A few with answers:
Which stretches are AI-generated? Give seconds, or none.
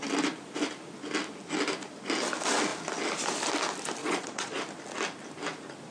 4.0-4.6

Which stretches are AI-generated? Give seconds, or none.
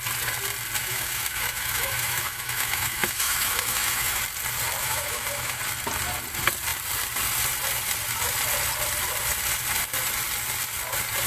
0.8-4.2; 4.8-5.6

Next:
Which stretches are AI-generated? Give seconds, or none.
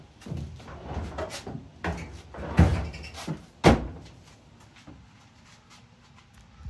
none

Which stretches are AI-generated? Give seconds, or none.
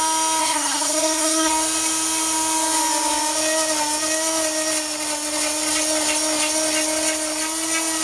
0.4-1.5